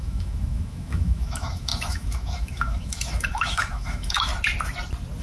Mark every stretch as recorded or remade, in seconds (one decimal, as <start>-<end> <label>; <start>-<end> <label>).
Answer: 0.0-4.3 remade; 4.3-5.2 recorded